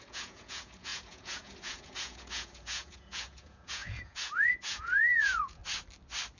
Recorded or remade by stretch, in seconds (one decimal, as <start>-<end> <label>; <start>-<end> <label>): 0.0-5.6 remade; 5.6-6.4 recorded